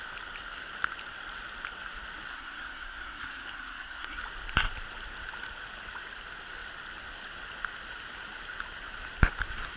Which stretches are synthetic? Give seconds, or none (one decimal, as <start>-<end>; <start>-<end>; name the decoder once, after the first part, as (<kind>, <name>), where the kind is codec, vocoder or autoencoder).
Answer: 2.3-4.2 (codec, SNAC)